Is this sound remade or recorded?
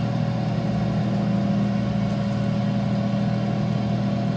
recorded